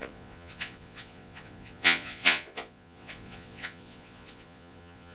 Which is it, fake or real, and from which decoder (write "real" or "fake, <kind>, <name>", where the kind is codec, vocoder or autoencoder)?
fake, vocoder, Vocos